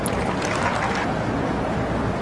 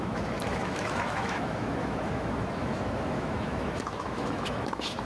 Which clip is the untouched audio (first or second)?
first